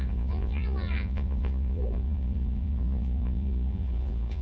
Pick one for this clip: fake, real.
fake